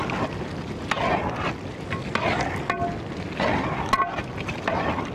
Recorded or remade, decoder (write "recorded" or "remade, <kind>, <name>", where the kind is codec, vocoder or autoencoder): recorded